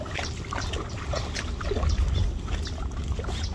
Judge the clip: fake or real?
real